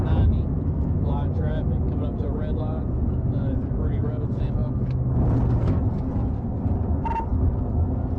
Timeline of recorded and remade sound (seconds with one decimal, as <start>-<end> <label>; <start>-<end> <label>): 0.0-8.2 recorded